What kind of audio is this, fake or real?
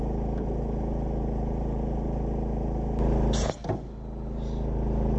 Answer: real